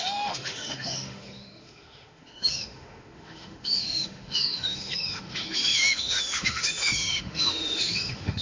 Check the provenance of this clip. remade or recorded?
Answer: remade